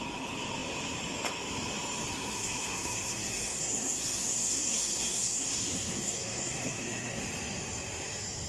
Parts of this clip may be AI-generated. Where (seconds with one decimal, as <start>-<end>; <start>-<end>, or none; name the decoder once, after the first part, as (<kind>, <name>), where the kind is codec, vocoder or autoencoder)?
2.1-7.2 (codec, SNAC)